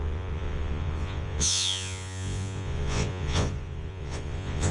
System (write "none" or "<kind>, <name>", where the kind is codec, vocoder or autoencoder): vocoder, Vocos